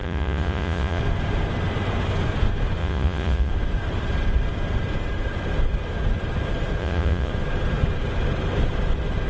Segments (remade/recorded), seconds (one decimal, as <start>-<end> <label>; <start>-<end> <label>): 0.0-1.0 remade; 1.0-2.8 recorded; 2.8-3.5 remade; 3.5-6.8 recorded; 6.8-7.3 remade; 7.3-9.3 recorded